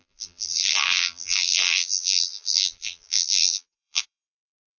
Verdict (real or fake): fake